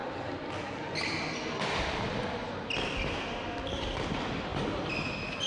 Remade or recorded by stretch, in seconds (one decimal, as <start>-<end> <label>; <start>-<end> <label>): 0.0-5.5 recorded